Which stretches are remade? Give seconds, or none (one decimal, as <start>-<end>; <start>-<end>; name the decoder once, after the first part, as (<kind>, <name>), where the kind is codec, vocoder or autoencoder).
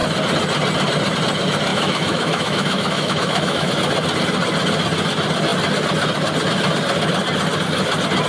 1.7-3.7 (autoencoder, DAC-VAE)